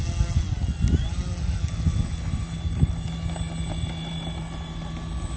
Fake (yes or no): no